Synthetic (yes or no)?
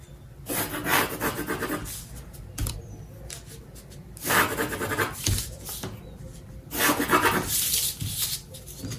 no